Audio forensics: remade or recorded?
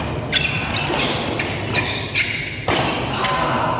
recorded